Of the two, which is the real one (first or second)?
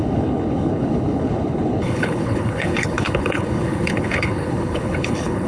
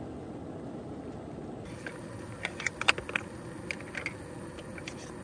second